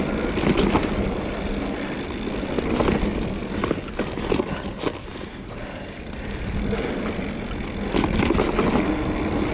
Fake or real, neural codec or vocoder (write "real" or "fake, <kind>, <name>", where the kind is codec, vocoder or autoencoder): real